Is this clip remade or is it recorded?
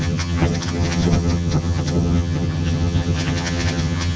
remade